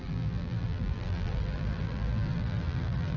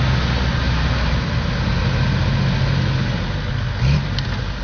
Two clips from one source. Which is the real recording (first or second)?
second